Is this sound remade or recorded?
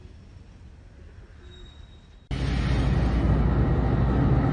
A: recorded